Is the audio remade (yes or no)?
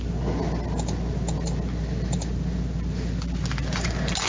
no